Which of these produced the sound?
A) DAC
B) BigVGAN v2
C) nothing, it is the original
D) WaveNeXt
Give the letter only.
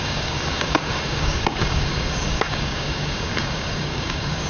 A